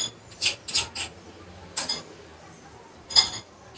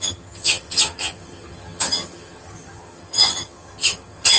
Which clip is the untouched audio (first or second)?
first